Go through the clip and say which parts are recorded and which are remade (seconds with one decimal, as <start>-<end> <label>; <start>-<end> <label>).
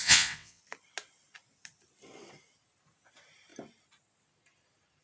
0.0-0.6 remade; 0.6-5.0 recorded